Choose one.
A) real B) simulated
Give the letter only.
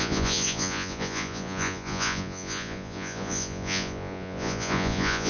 B